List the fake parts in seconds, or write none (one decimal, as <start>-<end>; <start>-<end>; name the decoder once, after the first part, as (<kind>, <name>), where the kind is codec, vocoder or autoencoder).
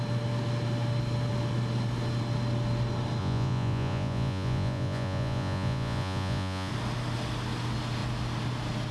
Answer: 3.2-6.7 (vocoder, Vocos)